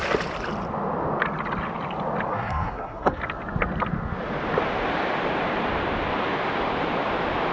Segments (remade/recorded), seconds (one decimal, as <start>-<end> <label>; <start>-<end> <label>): 0.0-2.3 recorded; 2.3-3.2 remade; 3.2-7.5 recorded